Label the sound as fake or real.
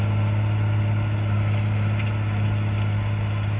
real